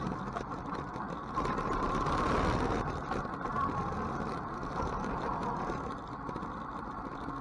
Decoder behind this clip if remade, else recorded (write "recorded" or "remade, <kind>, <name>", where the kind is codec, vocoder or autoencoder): recorded